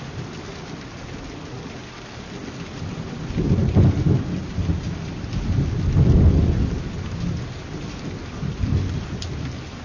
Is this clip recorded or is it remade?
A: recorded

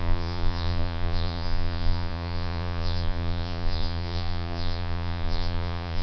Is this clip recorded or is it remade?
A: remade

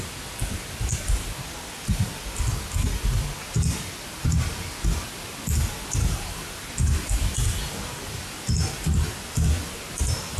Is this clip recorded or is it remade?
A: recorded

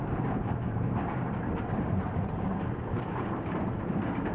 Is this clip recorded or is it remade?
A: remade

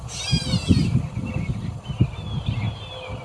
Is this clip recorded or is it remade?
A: recorded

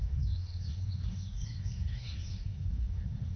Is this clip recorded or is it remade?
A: remade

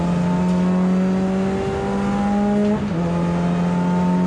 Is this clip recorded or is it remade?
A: recorded